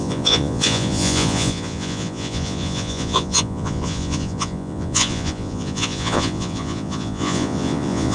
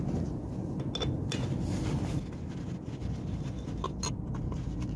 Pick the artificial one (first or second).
first